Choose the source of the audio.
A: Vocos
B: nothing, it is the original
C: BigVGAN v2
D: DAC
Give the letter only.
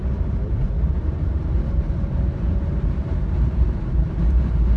C